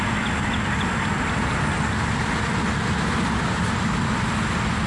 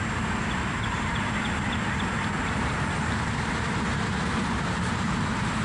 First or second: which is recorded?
first